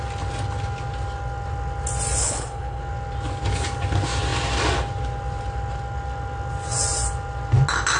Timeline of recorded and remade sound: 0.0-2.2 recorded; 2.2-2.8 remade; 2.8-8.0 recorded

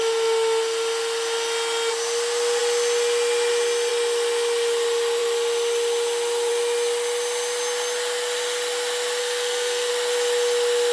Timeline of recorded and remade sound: 0.0-9.2 recorded; 9.2-9.9 remade; 9.9-10.9 recorded

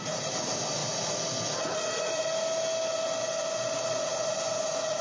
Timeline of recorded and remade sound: 0.0-5.0 recorded

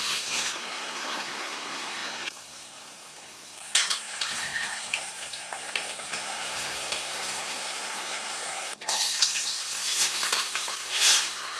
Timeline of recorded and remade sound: 0.0-11.6 remade

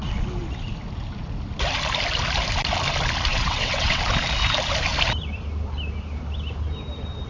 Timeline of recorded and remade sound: 0.0-3.3 recorded; 3.3-4.0 remade; 4.0-7.3 recorded

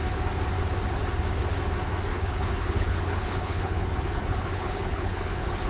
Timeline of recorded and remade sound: 0.0-2.1 recorded; 2.1-5.7 remade

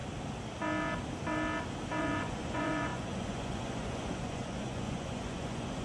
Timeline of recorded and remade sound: 0.0-2.0 recorded; 2.0-5.8 remade

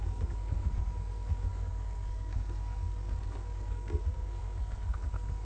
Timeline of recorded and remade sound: 0.0-5.4 remade